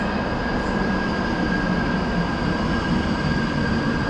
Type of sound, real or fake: real